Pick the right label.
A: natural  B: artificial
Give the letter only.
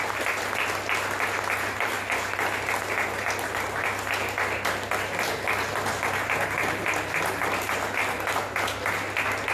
A